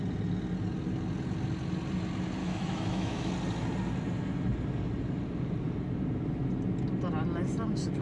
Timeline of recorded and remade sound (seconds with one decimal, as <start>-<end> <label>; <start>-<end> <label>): 0.0-2.4 recorded; 2.4-3.3 remade; 3.3-8.0 recorded